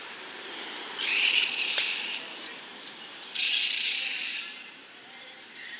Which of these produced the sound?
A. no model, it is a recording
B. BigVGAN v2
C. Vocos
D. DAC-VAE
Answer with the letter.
B